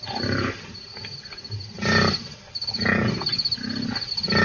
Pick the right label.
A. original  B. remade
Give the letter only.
A